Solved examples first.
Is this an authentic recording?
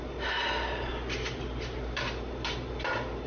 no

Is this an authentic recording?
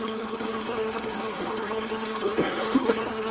no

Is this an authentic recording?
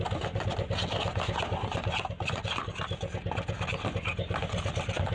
yes